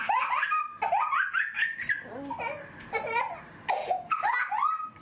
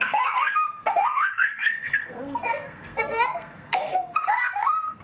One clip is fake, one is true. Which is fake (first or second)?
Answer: second